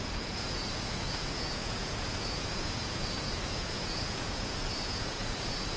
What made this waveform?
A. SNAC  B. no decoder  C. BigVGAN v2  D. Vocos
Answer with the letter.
D